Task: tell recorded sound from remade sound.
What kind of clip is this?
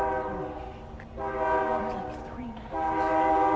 recorded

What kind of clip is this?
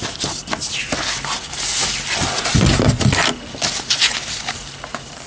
recorded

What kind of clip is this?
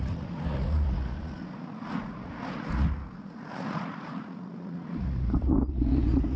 remade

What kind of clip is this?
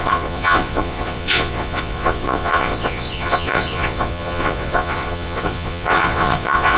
remade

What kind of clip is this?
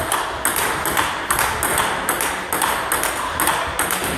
recorded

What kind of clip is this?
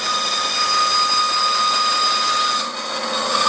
recorded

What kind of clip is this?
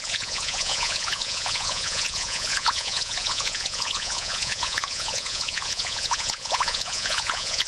remade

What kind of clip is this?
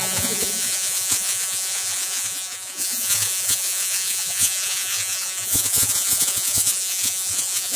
remade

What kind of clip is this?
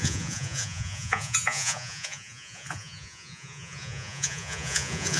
remade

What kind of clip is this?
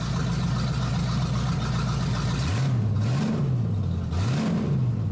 recorded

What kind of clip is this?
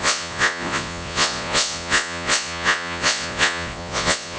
remade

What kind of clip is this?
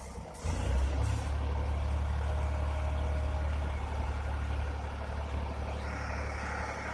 recorded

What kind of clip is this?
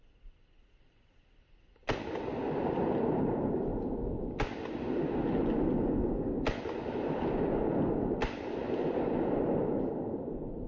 recorded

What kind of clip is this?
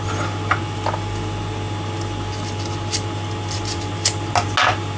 recorded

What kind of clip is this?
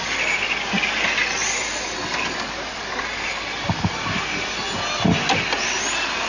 recorded